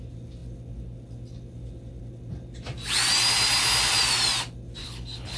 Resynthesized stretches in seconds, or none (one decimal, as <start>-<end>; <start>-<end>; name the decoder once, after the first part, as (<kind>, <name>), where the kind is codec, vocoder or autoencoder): 4.8-5.4 (codec, HILCodec)